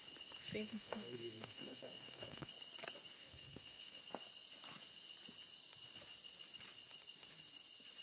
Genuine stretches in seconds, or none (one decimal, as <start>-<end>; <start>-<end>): 0.0-0.6; 2.5-3.2; 4.0-8.0